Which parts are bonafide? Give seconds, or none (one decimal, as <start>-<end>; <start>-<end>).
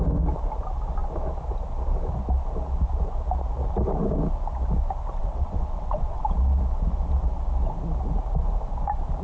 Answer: 0.0-5.2; 6.2-9.2